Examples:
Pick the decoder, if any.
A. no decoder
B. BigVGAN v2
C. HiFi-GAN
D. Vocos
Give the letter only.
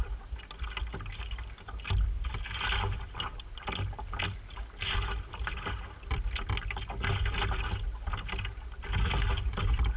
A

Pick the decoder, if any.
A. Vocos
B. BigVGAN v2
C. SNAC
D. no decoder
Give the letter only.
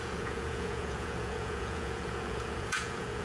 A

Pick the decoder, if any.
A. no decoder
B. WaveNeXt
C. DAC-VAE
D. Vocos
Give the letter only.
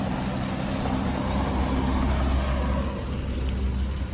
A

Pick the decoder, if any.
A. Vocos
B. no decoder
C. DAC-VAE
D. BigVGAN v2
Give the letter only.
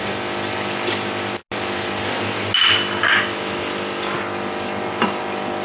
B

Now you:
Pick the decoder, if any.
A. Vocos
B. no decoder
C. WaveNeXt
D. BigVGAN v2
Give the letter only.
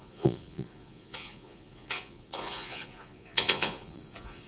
A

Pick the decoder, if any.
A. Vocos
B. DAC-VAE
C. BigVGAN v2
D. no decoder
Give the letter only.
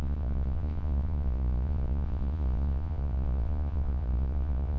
A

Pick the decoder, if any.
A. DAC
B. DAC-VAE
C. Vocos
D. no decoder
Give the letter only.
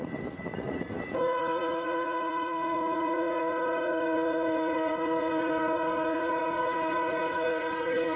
C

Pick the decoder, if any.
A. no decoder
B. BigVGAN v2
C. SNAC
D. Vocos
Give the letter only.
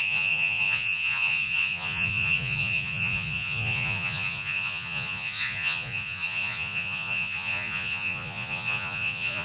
D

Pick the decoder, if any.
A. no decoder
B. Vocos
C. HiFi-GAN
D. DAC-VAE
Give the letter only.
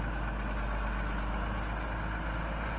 A